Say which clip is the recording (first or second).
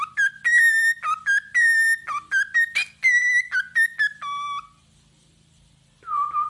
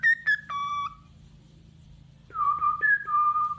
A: first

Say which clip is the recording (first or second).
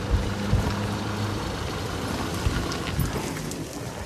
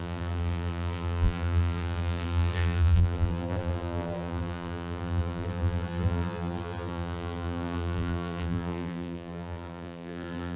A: first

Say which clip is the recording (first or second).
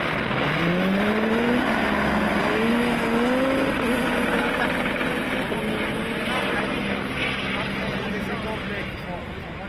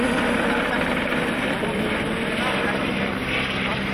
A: first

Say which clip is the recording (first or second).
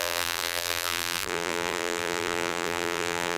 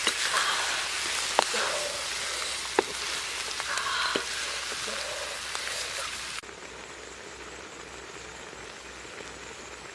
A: second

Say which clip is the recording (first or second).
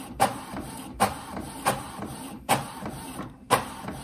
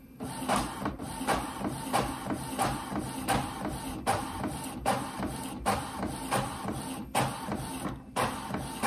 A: second